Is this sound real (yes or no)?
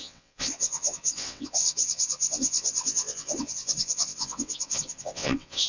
no